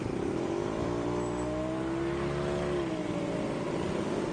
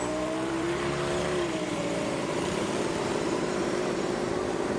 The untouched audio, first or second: first